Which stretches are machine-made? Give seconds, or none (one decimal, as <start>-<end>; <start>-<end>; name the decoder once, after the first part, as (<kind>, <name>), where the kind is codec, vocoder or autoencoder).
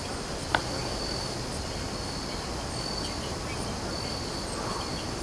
none